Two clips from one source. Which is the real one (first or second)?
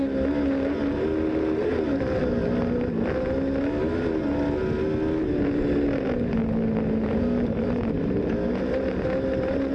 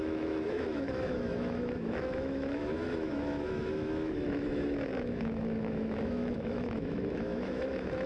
first